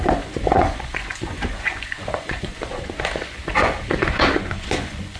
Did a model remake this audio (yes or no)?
yes